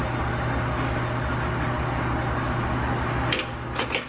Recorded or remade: recorded